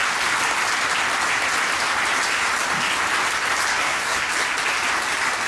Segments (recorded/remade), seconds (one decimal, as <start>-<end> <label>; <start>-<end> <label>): 0.0-3.7 recorded; 3.7-4.2 remade; 4.2-5.5 recorded